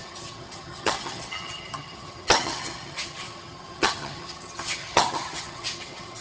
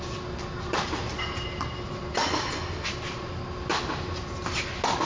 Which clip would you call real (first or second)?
second